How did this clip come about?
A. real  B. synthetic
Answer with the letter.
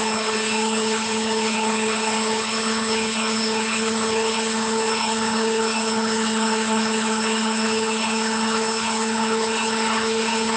B